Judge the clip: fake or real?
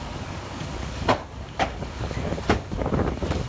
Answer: fake